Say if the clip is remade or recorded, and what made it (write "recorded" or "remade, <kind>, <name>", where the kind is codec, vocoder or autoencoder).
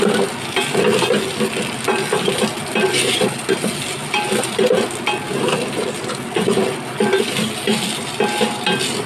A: recorded